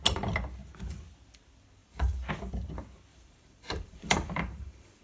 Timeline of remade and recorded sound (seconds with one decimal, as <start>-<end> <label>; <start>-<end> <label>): 0.0-1.8 recorded; 1.8-2.3 remade; 2.3-3.1 recorded; 3.1-5.0 remade